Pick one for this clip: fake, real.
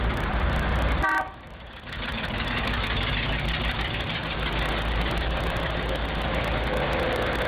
real